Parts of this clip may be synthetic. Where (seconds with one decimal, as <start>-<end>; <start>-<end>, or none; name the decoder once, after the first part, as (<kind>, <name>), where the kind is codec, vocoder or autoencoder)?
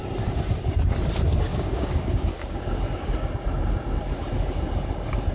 1.5-3.1 (codec, DAC)